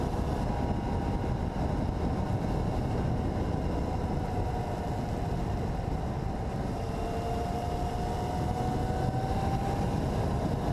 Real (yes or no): yes